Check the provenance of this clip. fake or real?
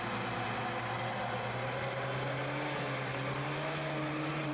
real